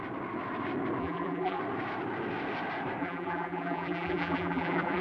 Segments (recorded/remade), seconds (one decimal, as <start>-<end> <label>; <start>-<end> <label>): 0.0-1.0 recorded; 1.0-1.6 remade; 1.6-3.0 recorded; 3.0-5.0 remade